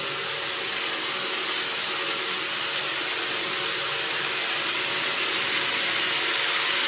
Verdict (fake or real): real